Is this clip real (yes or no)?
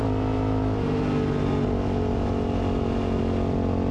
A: yes